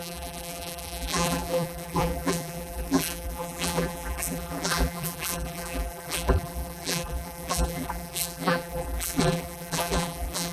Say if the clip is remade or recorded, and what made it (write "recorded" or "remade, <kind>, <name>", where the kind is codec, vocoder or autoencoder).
remade, vocoder, BigVGAN v2